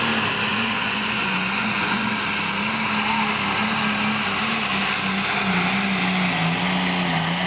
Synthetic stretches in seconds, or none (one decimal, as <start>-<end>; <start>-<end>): 0.5-2.1